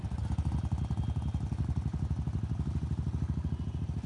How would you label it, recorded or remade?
recorded